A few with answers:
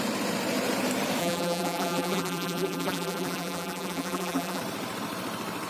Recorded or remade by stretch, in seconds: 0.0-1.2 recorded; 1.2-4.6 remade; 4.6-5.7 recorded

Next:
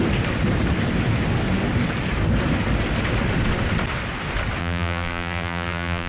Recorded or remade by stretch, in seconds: 0.0-4.6 recorded; 4.6-6.1 remade